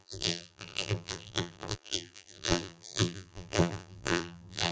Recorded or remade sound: remade